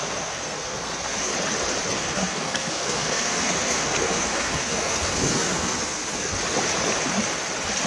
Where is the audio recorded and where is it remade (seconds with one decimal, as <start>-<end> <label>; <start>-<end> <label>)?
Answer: 0.0-1.3 remade; 1.3-1.9 recorded; 1.9-6.3 remade; 6.3-7.9 recorded

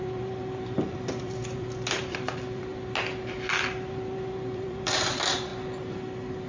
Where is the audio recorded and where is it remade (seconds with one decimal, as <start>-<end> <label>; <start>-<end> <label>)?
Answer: 0.0-2.7 remade; 2.7-3.9 recorded; 3.9-5.5 remade; 5.5-6.5 recorded

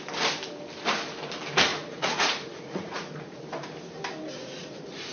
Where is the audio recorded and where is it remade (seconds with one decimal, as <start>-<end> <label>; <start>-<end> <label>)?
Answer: 0.0-1.7 recorded; 1.7-3.4 remade; 3.4-4.3 recorded; 4.3-5.1 remade

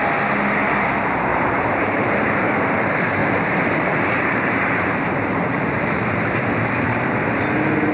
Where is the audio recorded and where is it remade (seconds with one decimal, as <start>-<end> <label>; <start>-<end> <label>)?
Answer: 0.0-1.3 recorded; 1.3-2.5 remade; 2.5-3.2 recorded; 3.2-7.4 remade; 7.4-7.9 recorded

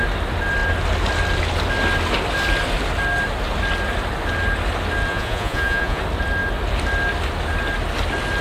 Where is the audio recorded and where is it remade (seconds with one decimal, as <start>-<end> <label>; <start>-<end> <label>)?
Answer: 0.0-5.1 recorded; 5.1-6.0 remade; 6.0-8.4 recorded

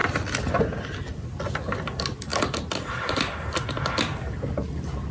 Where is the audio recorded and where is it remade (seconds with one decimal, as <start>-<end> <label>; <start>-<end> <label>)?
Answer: 0.0-5.1 recorded